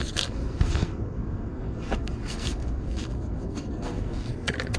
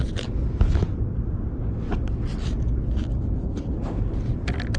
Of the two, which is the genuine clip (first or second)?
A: second